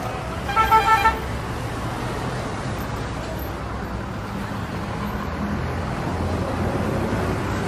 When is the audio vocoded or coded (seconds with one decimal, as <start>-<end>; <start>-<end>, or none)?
none